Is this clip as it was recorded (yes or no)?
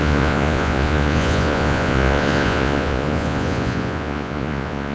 no